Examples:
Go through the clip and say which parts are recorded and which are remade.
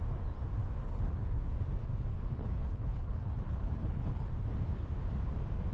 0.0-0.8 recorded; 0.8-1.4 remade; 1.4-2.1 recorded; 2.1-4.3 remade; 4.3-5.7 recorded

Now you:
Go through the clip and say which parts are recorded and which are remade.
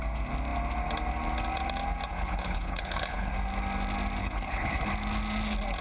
0.0-2.1 recorded; 2.1-3.3 remade; 3.3-4.2 recorded; 4.2-4.9 remade; 4.9-5.8 recorded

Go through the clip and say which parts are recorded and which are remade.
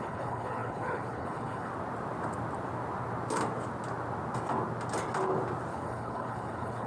0.0-1.7 remade; 1.7-5.7 recorded; 5.7-6.9 remade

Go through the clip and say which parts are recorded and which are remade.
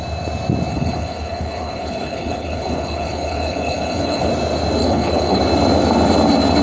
0.0-0.7 recorded; 0.7-4.3 remade; 4.3-4.8 recorded; 4.8-5.4 remade; 5.4-6.6 recorded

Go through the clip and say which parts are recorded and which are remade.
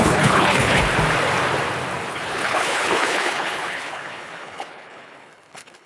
0.0-0.8 remade; 0.8-2.1 recorded; 2.1-5.9 remade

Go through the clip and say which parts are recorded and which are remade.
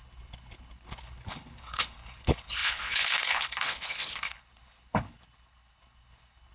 0.0-6.5 remade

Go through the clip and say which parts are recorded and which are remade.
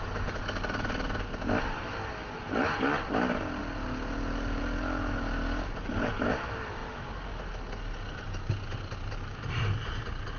0.0-10.4 recorded